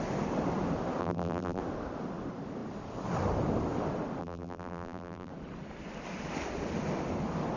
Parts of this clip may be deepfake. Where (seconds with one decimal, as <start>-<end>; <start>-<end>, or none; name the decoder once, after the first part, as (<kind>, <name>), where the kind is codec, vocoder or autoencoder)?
1.0-1.6 (vocoder, BigVGAN v2); 4.2-5.3